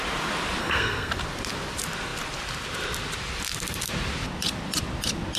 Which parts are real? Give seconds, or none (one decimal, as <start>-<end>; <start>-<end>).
0.0-0.6; 1.1-5.4